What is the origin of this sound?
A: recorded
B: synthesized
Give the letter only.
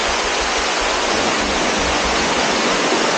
B